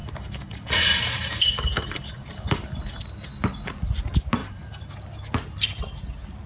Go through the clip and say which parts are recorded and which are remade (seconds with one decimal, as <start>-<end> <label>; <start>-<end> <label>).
0.0-3.0 remade; 3.0-4.4 recorded; 4.4-4.9 remade; 4.9-6.5 recorded